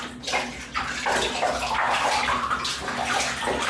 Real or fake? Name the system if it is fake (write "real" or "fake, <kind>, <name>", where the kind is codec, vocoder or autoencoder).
real